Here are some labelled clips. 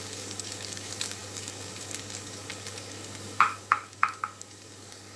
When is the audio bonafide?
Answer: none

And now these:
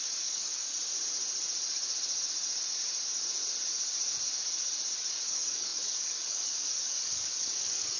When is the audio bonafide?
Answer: 0.7-5.1

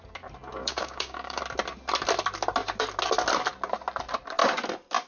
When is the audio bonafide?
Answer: 0.0-0.6; 1.4-5.1

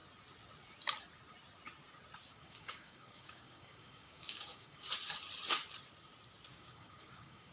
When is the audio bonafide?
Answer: 0.0-2.2; 4.9-6.5